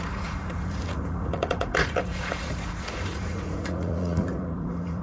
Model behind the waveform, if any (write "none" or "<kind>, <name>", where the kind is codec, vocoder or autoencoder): vocoder, Vocos